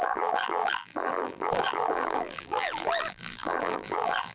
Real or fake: fake